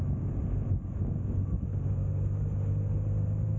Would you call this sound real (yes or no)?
yes